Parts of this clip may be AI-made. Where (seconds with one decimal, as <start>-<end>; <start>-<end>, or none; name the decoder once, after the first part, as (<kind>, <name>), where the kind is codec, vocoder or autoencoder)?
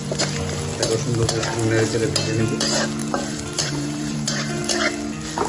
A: 3.0-4.6 (vocoder, BigVGAN v2)